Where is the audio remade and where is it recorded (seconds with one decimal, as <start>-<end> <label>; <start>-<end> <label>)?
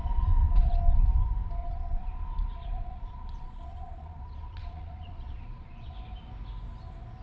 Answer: 0.0-0.8 remade; 0.8-1.6 recorded; 1.6-5.9 remade; 5.9-7.2 recorded